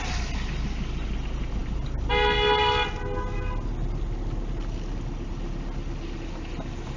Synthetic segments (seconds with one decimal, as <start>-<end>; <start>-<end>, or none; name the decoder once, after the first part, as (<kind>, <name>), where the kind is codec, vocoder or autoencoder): none